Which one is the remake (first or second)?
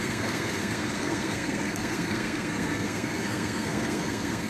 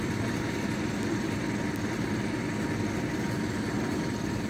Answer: first